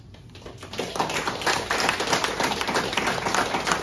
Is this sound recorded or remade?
recorded